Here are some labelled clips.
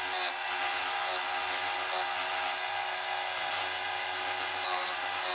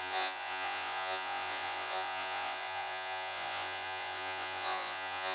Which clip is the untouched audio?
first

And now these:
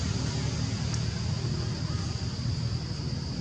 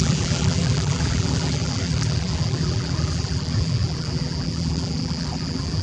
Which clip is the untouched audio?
first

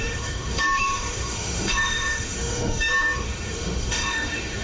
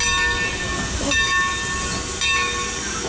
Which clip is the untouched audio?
second